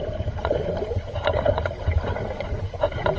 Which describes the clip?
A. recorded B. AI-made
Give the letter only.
A